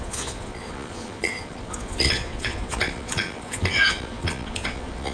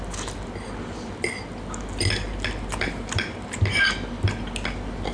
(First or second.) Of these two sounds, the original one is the second